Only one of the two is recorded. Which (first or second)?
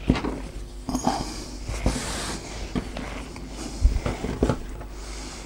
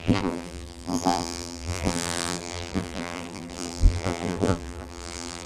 first